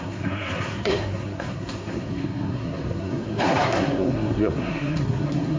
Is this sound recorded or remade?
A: remade